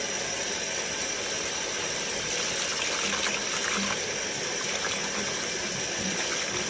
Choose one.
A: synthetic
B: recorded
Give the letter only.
B